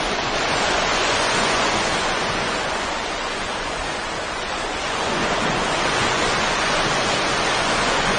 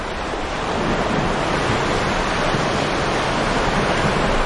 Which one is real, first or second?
second